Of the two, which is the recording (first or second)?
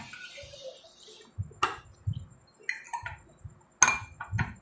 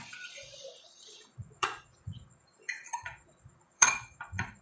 first